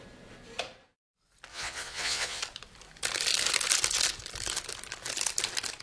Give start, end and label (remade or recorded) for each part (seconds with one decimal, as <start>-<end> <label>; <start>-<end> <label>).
0.0-1.5 recorded; 1.5-2.4 remade; 2.4-5.8 recorded